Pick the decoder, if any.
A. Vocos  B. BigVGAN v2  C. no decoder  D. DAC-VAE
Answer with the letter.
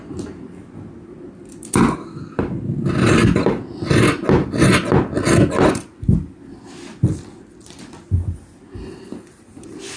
C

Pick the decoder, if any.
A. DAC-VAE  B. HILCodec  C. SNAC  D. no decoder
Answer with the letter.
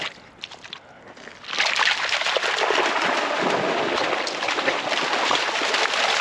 D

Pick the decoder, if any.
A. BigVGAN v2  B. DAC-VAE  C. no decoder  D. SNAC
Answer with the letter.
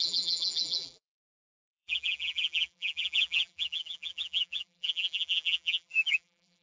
A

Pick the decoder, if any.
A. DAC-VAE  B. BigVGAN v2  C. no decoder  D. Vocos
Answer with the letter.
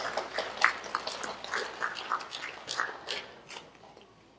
C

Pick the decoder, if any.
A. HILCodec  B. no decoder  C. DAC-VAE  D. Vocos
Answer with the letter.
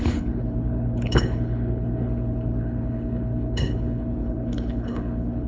A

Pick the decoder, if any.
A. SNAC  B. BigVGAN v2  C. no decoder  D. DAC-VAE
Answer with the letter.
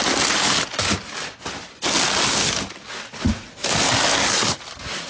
C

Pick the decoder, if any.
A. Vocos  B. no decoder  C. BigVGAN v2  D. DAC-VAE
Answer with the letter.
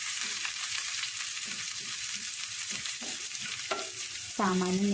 C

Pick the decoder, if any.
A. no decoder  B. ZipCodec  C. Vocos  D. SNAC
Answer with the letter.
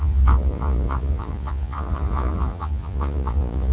C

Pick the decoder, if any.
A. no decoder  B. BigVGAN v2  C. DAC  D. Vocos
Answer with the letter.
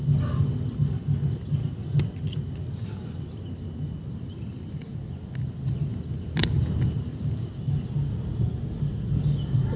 A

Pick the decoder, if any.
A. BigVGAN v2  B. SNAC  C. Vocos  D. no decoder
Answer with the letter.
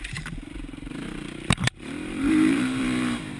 A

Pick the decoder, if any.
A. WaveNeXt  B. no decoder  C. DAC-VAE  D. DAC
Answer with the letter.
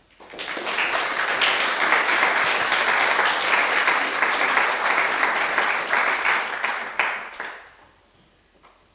B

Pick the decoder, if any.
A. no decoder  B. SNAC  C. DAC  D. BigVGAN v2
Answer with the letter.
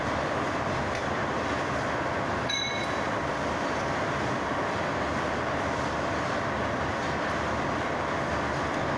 A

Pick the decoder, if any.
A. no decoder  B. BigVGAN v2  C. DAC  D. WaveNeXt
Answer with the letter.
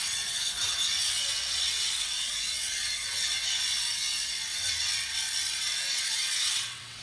D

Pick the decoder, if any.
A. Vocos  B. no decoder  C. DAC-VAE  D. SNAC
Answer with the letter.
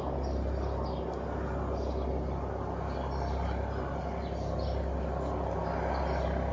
B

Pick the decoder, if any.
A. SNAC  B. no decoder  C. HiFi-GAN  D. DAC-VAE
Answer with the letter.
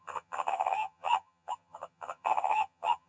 C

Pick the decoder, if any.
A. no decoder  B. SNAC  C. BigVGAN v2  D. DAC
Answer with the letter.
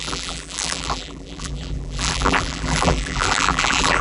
C